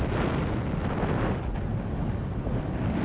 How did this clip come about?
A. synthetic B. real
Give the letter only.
B